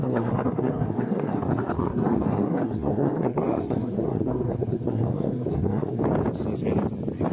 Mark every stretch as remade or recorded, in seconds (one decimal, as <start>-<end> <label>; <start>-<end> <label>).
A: 0.0-6.0 remade; 6.0-7.3 recorded